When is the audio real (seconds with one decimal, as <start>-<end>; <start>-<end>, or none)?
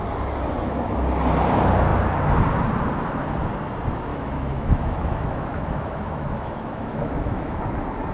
0.0-4.1; 7.6-8.1